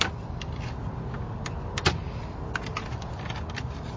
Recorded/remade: recorded